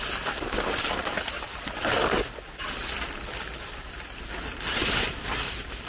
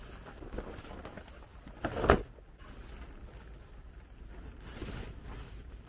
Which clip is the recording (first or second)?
second